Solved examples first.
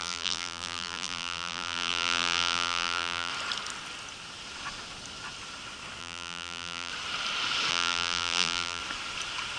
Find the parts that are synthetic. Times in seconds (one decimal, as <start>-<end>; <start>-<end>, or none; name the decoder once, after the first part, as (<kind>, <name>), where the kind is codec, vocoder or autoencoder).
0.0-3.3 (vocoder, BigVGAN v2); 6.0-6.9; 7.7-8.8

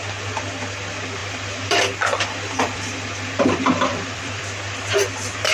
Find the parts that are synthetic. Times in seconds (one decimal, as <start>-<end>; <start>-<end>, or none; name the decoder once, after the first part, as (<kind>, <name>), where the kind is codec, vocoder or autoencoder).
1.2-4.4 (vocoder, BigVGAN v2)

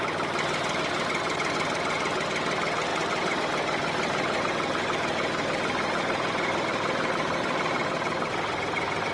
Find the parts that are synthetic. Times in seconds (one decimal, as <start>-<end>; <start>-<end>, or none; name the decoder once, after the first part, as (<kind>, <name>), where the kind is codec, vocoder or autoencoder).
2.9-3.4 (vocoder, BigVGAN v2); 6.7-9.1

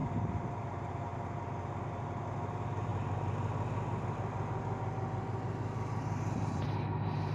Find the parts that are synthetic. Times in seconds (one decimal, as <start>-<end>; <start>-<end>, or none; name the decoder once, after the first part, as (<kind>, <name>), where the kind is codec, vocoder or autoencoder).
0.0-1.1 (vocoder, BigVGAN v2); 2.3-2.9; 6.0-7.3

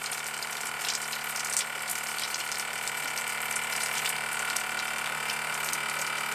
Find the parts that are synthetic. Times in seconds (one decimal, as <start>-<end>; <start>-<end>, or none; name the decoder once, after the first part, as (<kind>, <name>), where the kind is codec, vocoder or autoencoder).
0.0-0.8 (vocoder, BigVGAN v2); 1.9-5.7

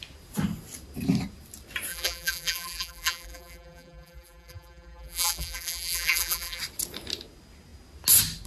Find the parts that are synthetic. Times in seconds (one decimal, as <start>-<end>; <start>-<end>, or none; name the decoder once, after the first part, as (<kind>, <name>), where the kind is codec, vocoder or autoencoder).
1.9-6.6 (vocoder, BigVGAN v2)

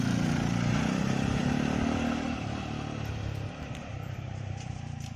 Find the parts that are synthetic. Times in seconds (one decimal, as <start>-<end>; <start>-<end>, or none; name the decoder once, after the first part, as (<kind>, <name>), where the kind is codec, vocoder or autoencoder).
0.0-1.4 (vocoder, BigVGAN v2); 3.8-5.2

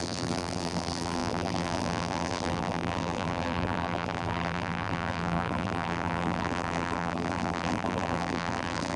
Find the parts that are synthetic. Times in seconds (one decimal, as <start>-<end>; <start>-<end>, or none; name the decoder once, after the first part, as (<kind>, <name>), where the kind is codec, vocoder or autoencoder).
0.0-9.0 (vocoder, BigVGAN v2)